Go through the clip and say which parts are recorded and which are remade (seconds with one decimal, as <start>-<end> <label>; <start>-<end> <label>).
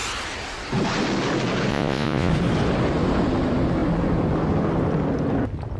0.0-1.7 recorded; 1.7-2.3 remade; 2.3-5.8 recorded